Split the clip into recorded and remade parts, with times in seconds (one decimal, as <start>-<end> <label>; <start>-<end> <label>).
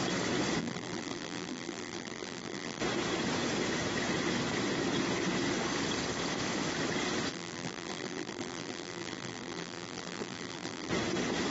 0.0-0.6 recorded; 0.6-2.8 remade; 2.8-7.3 recorded; 7.3-10.9 remade; 10.9-11.5 recorded